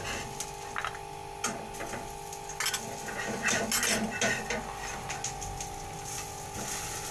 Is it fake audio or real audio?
real